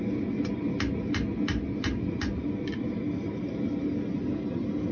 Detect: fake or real real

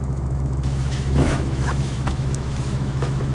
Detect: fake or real fake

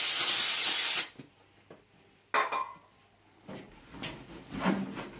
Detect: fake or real real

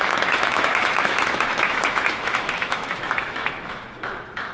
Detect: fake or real fake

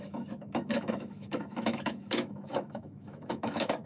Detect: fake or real fake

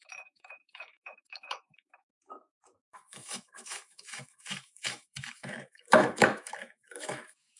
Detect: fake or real fake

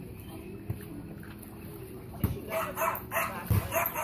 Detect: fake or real real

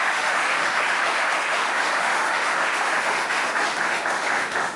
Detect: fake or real fake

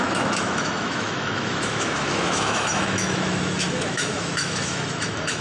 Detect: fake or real fake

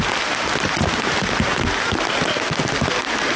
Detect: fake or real real